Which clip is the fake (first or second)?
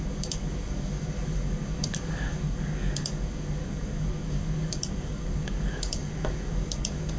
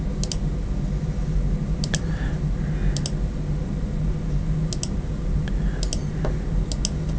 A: first